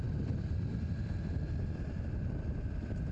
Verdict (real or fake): real